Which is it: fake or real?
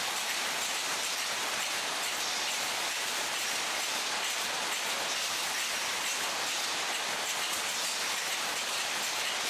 real